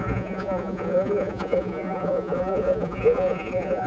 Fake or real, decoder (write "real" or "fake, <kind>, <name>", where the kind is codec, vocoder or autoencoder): fake, vocoder, Vocos